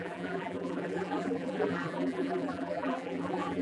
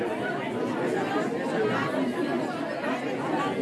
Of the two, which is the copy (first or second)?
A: first